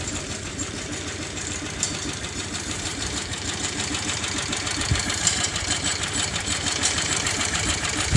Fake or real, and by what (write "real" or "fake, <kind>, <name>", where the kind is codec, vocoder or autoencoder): fake, vocoder, BigVGAN v2